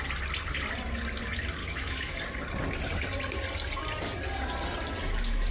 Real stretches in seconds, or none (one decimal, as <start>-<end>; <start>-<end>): 0.0-1.6; 2.2-5.5